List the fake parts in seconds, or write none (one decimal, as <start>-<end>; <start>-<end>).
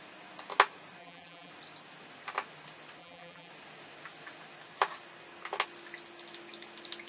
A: 1.0-1.5; 3.0-3.5